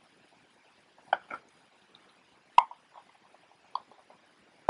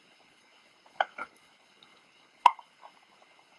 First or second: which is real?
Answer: first